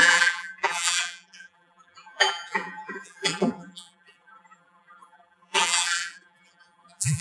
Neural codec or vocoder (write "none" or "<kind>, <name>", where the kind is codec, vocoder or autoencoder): vocoder, BigVGAN v2